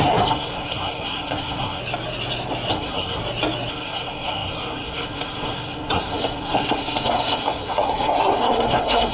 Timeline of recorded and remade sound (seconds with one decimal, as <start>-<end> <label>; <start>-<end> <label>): 0.0-1.8 remade; 1.8-2.7 recorded; 2.7-3.2 remade; 3.2-3.7 recorded; 3.7-9.1 remade